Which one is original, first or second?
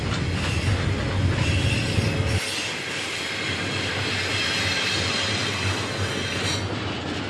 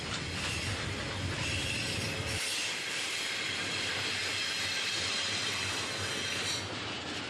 first